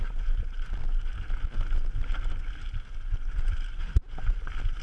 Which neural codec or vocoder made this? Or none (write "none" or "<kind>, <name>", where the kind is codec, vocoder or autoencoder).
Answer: none